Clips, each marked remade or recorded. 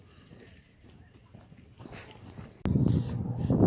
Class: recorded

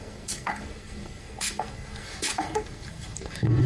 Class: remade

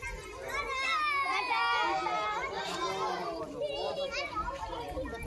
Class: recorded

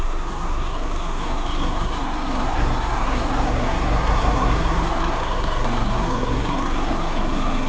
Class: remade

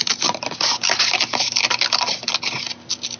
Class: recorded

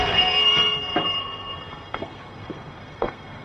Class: remade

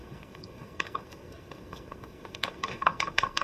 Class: remade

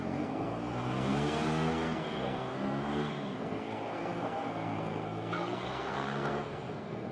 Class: remade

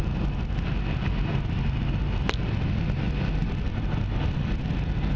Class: recorded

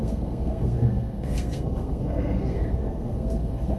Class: remade